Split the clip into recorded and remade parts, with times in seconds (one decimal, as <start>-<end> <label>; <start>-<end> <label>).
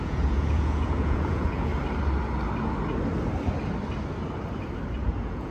0.0-1.7 remade; 1.7-5.0 recorded; 5.0-5.5 remade